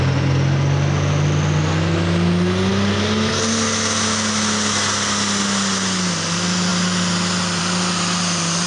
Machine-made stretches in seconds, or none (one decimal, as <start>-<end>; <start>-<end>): none